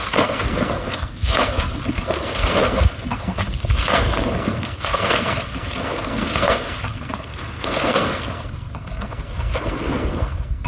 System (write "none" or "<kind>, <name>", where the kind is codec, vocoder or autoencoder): codec, SNAC